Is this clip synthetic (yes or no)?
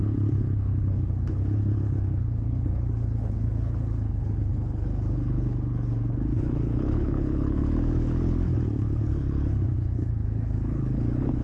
yes